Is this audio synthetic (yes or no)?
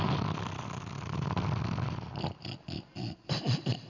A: no